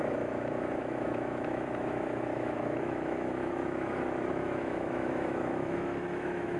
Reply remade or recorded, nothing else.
remade